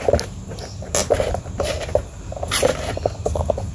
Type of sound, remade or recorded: recorded